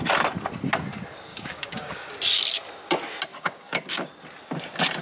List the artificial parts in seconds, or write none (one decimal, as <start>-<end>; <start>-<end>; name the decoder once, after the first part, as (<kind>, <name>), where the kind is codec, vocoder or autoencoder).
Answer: 1.3-2.1 (codec, DAC); 3.3-4.1